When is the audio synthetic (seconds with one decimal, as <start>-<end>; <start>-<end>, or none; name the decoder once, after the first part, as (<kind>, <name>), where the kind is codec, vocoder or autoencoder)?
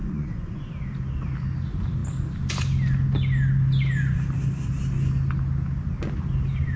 0.0-0.7 (vocoder, Vocos)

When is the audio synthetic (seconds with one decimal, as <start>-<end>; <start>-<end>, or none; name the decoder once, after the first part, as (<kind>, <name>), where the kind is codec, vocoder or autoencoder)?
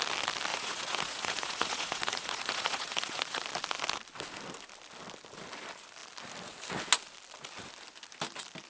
0.5-3.4 (vocoder, Vocos)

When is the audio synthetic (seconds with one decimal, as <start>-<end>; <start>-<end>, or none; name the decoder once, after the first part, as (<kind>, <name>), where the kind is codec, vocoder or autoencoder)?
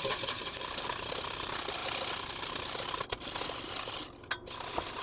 none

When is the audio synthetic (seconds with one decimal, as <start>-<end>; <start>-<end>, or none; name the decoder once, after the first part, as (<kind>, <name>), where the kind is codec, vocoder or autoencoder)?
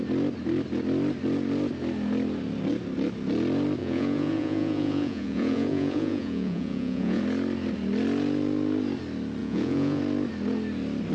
3.8-7.2 (vocoder, Vocos); 9.4-10.0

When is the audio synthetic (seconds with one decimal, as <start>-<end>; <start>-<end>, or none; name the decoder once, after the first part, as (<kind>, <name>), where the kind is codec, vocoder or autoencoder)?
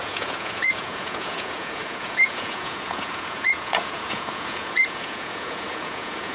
0.0-6.3 (vocoder, Vocos)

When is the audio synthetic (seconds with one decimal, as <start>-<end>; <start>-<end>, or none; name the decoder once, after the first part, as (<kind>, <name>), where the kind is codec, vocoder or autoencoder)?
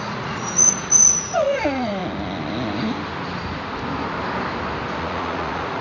0.0-2.0 (vocoder, Vocos); 5.0-5.8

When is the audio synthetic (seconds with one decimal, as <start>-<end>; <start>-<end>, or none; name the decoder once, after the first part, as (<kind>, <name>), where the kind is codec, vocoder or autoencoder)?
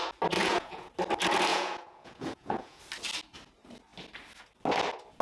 0.4-0.9 (vocoder, Vocos); 1.5-2.8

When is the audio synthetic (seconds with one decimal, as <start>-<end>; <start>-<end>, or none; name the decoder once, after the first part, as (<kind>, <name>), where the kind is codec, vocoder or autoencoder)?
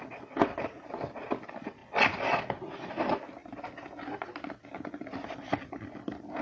none